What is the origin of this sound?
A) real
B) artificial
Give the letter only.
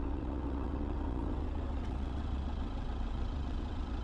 B